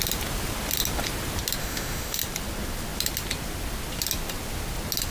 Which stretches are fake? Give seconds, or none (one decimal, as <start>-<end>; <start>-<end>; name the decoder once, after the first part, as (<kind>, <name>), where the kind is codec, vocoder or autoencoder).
1.6-2.2 (autoencoder, DAC-VAE)